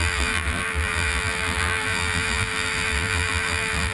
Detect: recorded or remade remade